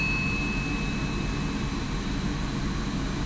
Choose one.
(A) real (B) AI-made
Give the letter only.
A